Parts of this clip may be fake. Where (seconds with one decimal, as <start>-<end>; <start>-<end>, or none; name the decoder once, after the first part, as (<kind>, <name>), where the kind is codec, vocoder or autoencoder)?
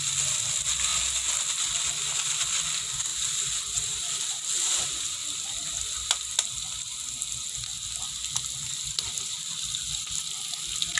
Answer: 3.1-4.8 (vocoder, BigVGAN v2)